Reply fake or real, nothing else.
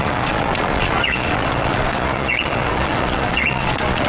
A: fake